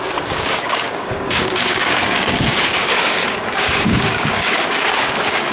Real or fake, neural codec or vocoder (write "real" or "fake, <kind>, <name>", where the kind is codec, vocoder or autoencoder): fake, codec, DAC